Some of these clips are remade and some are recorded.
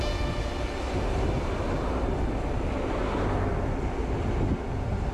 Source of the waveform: recorded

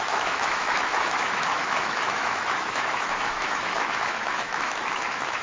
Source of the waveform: remade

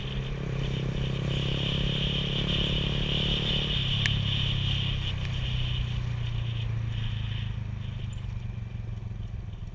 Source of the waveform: recorded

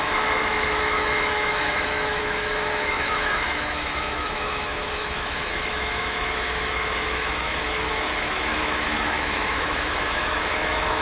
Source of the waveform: remade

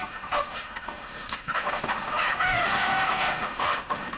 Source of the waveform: remade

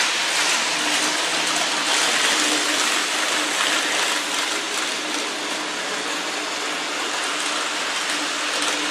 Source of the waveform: recorded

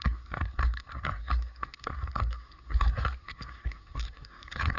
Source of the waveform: remade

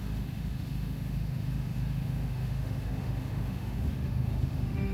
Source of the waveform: remade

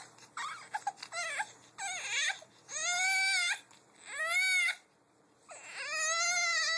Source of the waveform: recorded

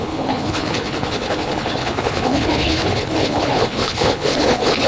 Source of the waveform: remade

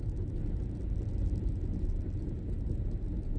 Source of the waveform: recorded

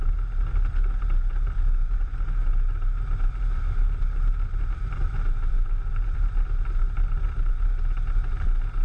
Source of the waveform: recorded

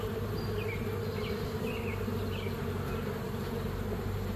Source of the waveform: recorded